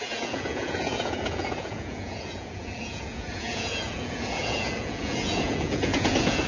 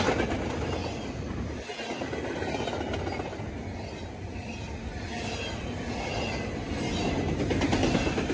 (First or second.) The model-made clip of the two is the first